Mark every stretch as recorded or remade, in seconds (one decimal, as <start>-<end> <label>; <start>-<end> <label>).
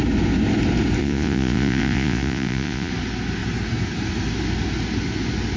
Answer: 0.0-1.0 recorded; 1.0-2.9 remade; 2.9-5.6 recorded